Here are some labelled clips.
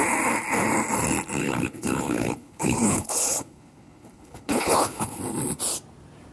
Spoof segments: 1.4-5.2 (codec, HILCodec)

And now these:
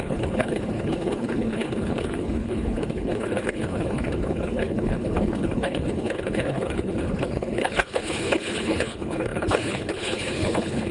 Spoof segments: 0.0-10.9 (codec, HILCodec)

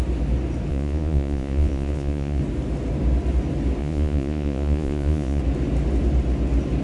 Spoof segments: 0.7-2.4 (vocoder, Vocos); 3.8-5.4

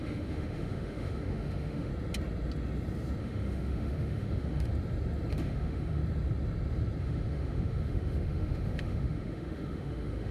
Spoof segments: 0.0-1.9 (autoencoder, DAC-VAE); 3.2-4.7; 5.3-6.0; 7.0-10.3

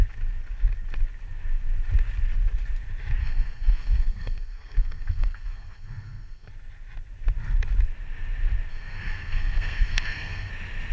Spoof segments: 3.2-6.5 (codec, SNAC); 8.7-10.5